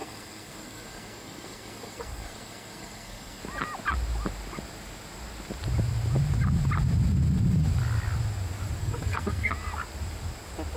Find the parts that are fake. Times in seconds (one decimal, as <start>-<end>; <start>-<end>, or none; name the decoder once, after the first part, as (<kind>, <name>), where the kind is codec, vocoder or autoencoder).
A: 0.0-3.4 (codec, SNAC); 8.8-9.5